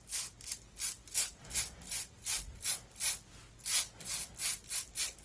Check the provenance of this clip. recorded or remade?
recorded